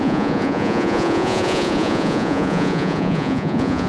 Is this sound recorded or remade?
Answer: remade